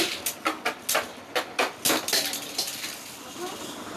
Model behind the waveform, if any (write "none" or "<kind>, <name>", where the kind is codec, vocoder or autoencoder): none